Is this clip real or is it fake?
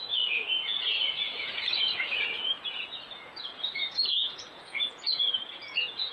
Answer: fake